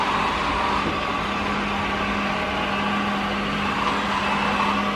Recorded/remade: recorded